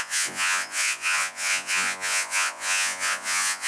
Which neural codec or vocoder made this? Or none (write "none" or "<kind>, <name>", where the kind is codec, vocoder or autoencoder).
vocoder, Vocos